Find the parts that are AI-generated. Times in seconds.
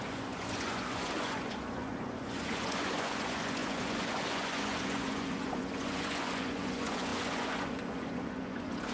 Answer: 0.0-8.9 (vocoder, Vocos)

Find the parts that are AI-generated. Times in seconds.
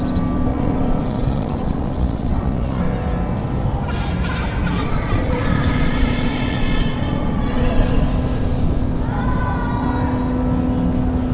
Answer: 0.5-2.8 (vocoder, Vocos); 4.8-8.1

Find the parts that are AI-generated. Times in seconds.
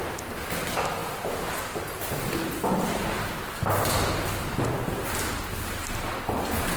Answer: none